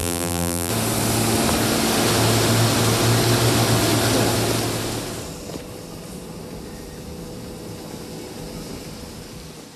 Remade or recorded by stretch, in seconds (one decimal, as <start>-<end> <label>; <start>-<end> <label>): 0.0-0.7 remade; 0.7-9.8 recorded